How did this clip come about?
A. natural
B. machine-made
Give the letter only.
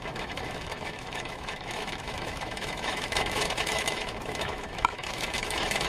B